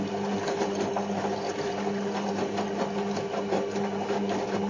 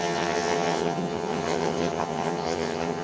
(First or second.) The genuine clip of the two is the first